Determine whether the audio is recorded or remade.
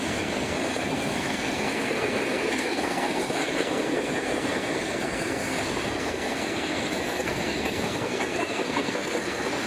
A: remade